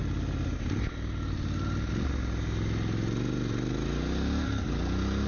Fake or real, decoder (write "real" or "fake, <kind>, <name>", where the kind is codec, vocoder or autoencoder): real